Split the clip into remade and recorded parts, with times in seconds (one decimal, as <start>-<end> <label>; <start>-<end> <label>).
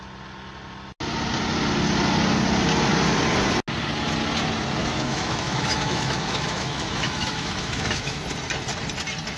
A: 0.0-4.8 recorded; 4.8-8.2 remade; 8.2-9.4 recorded